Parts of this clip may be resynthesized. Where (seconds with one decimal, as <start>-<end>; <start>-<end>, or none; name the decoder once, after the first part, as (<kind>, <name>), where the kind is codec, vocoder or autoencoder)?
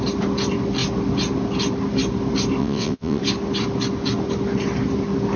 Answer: 2.6-3.2 (vocoder, WaveNeXt)